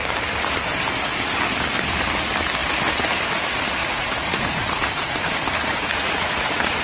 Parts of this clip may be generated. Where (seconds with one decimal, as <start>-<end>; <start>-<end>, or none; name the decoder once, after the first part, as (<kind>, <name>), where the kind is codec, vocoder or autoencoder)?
3.8-6.8 (vocoder, Vocos)